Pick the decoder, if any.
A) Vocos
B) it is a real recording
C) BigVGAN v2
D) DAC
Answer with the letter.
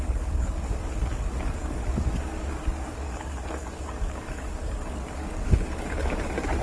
D